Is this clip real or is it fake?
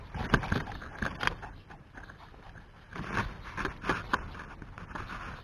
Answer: real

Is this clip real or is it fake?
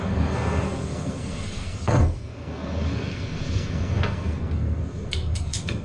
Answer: fake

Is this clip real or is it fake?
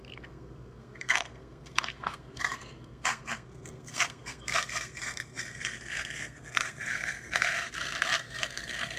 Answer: fake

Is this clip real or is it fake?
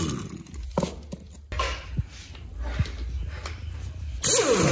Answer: real